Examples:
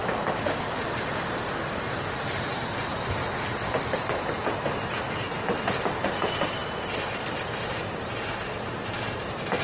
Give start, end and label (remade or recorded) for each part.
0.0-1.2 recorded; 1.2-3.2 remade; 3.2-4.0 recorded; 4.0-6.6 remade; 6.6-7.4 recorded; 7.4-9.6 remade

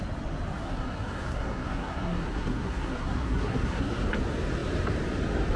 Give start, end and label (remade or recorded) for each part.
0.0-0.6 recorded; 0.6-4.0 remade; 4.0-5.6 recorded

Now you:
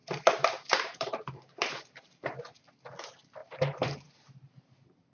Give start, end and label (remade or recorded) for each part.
0.0-2.4 remade; 2.4-3.4 recorded; 3.4-4.4 remade; 4.4-5.1 recorded

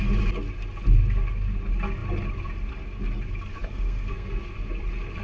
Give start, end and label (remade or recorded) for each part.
0.0-3.6 recorded; 3.6-4.4 remade; 4.4-5.2 recorded

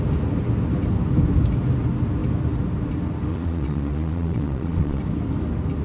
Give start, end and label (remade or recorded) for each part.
0.0-3.3 recorded; 3.3-5.0 remade; 5.0-5.8 recorded

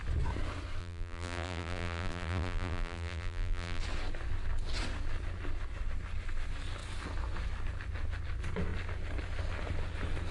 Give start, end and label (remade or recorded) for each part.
0.0-0.8 recorded; 0.8-3.8 remade; 3.8-10.3 recorded

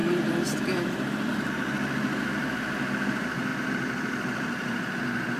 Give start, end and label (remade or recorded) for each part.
0.0-1.3 remade; 1.3-3.5 recorded; 3.5-5.4 remade